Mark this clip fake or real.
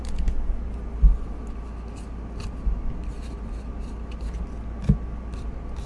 real